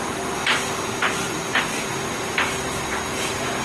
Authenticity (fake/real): real